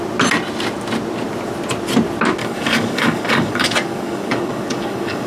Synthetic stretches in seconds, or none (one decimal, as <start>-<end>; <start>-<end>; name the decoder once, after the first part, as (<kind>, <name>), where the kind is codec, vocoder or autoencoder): 2.4-5.3 (codec, DAC)